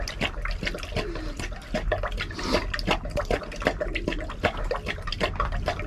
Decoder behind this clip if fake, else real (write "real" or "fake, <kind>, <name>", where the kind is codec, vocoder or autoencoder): real